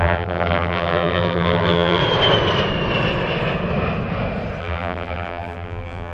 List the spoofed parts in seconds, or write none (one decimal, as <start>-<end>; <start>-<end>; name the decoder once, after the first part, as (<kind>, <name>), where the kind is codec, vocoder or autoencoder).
0.0-2.0 (vocoder, BigVGAN v2); 4.6-6.1

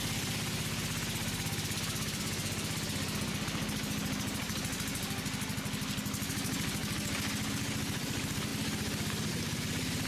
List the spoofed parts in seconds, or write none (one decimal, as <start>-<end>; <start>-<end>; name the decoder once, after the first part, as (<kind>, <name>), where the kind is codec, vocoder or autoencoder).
0.0-2.4 (vocoder, BigVGAN v2); 6.3-6.8; 7.5-8.5; 9.3-10.1

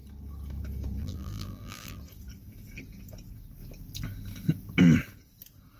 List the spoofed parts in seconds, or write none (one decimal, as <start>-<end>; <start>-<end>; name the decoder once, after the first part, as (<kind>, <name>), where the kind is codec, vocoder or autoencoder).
1.0-2.0 (vocoder, BigVGAN v2)

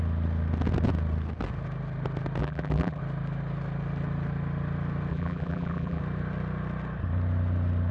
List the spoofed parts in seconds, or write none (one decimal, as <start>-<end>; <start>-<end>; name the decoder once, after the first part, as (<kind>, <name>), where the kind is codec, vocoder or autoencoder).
2.4-3.0 (vocoder, BigVGAN v2); 5.1-6.0

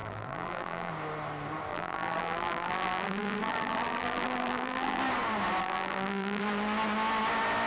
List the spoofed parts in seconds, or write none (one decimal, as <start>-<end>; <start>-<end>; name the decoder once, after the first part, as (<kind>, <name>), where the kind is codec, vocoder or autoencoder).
0.0-0.9 (vocoder, BigVGAN v2); 1.7-5.0; 5.6-6.4

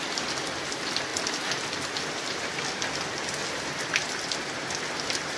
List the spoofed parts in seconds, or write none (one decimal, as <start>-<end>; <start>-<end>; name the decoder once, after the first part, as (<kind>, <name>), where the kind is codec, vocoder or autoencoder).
none